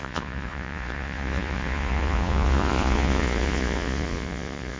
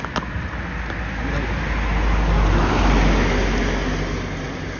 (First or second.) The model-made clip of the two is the first